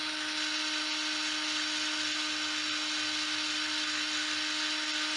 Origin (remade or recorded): recorded